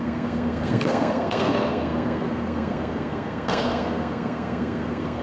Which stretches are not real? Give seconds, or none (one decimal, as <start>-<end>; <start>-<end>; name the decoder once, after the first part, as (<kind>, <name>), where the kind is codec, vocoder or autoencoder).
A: 0.0-5.2 (codec, SNAC)